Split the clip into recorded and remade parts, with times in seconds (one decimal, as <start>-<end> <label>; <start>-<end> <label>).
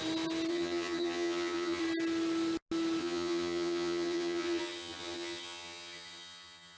0.0-0.5 recorded; 0.5-1.8 remade; 1.8-3.0 recorded; 3.0-6.8 remade